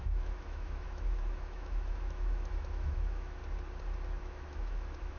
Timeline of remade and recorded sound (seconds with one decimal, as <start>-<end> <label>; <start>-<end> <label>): 0.0-3.4 remade; 3.4-4.2 recorded; 4.2-5.2 remade